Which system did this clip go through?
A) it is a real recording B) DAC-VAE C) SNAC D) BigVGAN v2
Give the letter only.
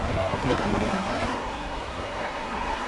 C